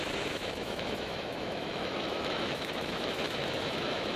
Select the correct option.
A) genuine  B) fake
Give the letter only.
B